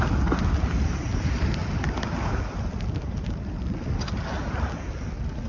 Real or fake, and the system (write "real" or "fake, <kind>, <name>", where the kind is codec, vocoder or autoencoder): real